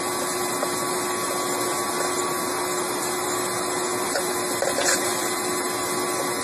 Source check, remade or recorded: recorded